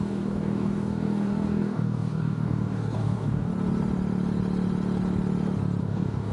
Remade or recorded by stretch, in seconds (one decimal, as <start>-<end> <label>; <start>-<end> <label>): 0.0-3.5 remade; 3.5-5.8 recorded; 5.8-6.3 remade